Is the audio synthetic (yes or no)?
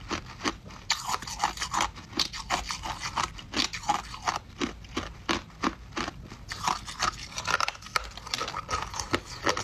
no